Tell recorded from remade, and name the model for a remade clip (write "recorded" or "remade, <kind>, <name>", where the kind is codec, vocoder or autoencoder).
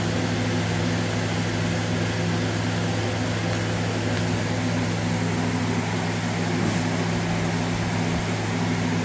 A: recorded